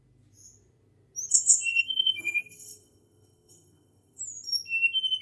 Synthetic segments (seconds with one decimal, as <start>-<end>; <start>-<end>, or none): 1.3-4.2

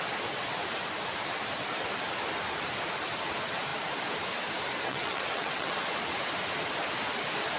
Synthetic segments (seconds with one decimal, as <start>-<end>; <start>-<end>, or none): 4.9-5.7